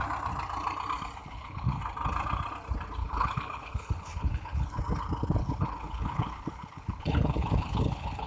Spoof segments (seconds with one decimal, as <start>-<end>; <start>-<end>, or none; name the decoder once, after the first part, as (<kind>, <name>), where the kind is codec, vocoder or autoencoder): 1.2-1.8 (codec, HILCodec); 3.0-4.8; 5.4-8.3

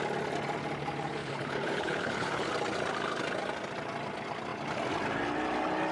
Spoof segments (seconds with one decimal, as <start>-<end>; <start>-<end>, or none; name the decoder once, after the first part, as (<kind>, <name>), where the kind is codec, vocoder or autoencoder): 1.2-2.5 (codec, HILCodec)

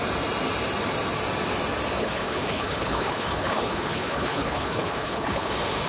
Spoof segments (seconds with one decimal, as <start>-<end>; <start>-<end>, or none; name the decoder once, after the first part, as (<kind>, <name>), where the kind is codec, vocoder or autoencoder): 2.0-5.5 (codec, HILCodec)